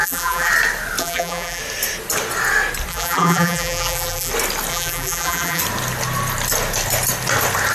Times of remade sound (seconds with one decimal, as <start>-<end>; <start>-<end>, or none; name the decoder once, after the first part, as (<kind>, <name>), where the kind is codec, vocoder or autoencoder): 0.0-0.5 (vocoder, BigVGAN v2); 1.0-1.6; 2.9-4.3; 4.7-5.6